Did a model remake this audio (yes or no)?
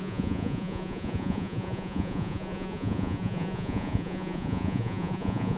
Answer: yes